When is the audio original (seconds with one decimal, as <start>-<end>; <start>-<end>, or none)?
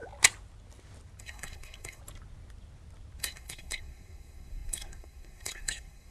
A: 0.0-1.2; 2.0-3.2